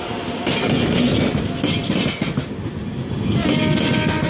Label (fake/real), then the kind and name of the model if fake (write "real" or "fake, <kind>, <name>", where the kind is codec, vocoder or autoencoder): real